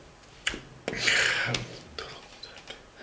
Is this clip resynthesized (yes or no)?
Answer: no